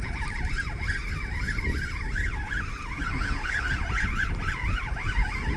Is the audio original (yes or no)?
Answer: yes